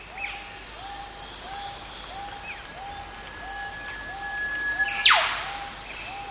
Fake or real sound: real